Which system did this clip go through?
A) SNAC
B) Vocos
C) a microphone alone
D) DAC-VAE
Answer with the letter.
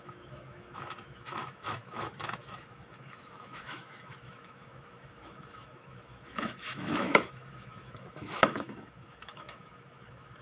D